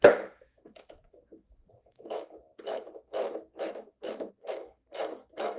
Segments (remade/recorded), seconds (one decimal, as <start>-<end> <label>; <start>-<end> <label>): 0.0-5.6 remade